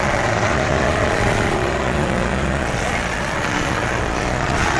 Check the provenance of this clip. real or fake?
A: fake